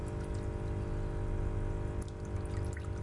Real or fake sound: real